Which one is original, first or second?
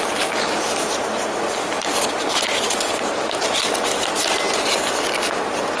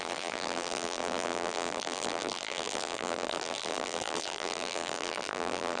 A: first